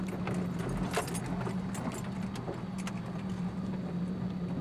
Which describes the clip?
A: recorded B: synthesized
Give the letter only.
A